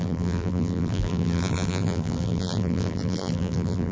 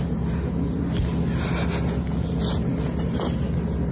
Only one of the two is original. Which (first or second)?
second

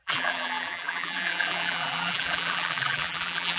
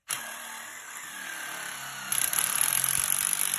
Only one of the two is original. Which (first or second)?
second